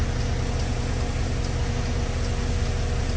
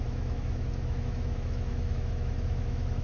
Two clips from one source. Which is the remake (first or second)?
second